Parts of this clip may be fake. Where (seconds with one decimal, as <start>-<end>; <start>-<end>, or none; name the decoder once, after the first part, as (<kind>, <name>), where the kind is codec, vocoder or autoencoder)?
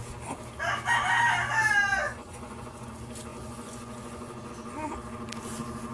1.9-2.9 (vocoder, Vocos); 3.3-4.5